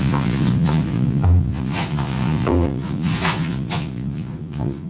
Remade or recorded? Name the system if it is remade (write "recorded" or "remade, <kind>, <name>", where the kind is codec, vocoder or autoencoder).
remade, vocoder, Vocos